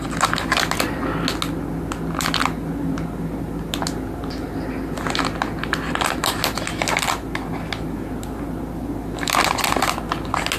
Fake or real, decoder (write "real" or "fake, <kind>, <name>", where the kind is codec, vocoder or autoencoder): real